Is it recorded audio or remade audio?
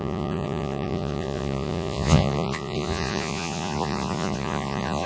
remade